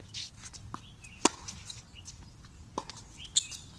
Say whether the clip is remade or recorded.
recorded